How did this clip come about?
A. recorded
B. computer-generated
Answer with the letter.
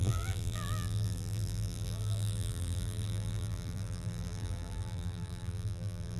B